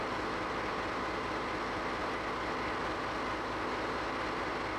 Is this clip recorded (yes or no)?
yes